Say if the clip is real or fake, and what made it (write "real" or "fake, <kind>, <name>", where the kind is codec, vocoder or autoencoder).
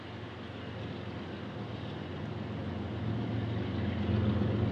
real